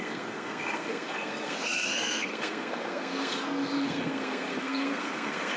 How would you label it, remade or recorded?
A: remade